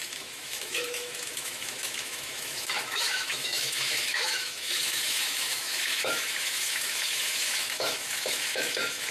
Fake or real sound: fake